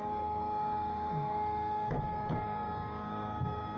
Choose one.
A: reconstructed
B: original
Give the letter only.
A